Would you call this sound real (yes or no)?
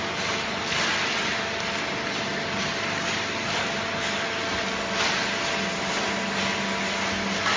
yes